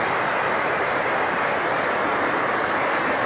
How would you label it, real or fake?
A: real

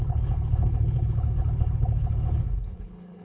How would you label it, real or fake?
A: fake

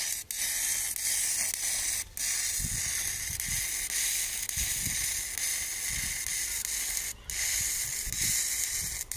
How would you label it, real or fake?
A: real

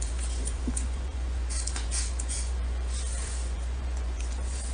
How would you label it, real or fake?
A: fake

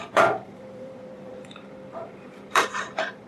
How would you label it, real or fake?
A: fake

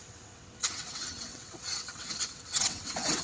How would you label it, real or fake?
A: fake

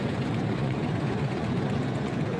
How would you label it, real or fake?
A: fake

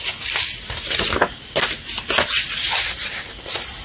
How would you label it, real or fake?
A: real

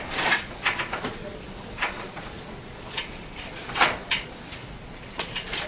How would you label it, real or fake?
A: fake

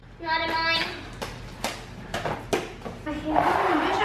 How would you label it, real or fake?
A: real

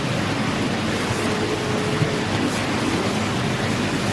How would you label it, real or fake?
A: real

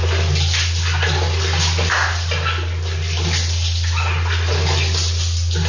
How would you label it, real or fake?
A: real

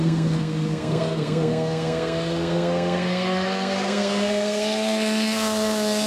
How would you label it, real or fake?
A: fake